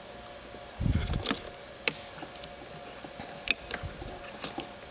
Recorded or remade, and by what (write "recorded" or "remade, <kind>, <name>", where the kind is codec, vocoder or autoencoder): recorded